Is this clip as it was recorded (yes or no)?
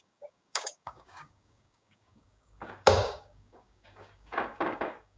no